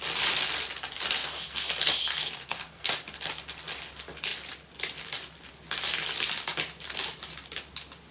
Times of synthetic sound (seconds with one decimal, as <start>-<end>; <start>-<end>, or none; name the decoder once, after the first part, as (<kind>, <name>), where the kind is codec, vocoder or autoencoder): 1.2-1.7 (codec, SNAC); 2.2-2.9